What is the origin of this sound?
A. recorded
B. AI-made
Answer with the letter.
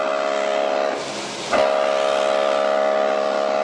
A